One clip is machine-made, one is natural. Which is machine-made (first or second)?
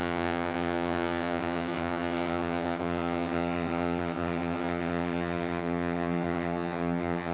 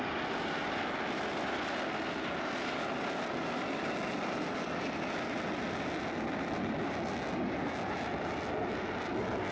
first